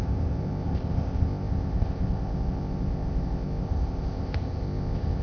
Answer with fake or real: fake